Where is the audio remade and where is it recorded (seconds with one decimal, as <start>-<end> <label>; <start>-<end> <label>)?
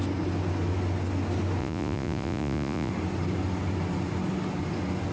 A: 0.0-1.6 recorded; 1.6-2.9 remade; 2.9-5.1 recorded